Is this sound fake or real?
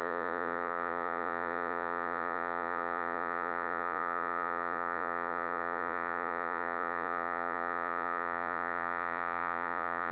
fake